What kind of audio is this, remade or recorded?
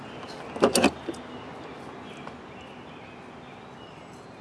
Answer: recorded